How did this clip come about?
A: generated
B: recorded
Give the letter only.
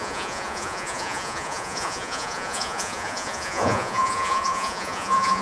A